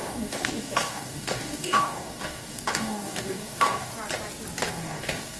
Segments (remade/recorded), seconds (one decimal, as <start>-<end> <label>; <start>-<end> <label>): 0.0-3.9 remade; 3.9-4.7 recorded; 4.7-5.4 remade